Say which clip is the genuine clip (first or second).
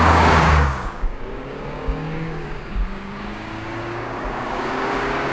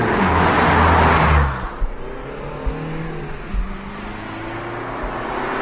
second